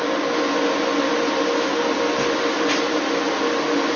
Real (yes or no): yes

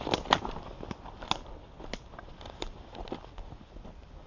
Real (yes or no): yes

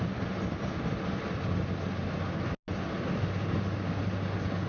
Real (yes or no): yes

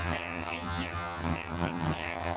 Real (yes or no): no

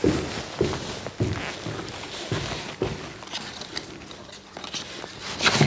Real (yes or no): yes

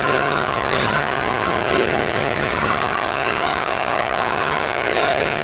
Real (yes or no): no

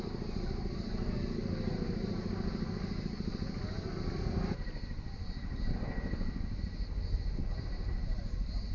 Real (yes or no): yes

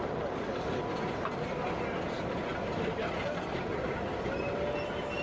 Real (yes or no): yes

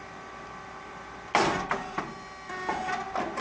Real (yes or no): yes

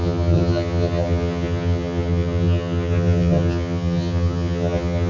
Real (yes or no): no